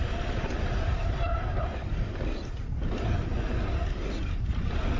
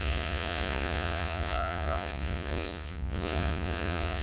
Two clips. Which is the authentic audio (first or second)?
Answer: first